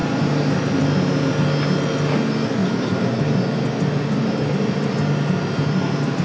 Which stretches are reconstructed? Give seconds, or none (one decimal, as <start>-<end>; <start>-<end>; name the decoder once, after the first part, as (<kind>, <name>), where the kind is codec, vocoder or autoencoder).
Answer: none